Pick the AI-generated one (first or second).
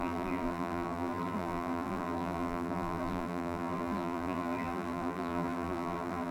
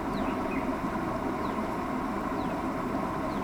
first